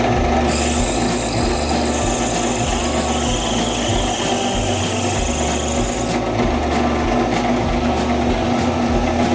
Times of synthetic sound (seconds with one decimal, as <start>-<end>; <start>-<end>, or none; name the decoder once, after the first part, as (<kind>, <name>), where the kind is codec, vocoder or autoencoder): none